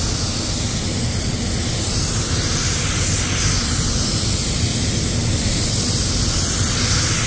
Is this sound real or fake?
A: real